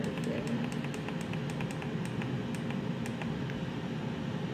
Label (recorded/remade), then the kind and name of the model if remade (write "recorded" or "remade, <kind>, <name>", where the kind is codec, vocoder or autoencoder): recorded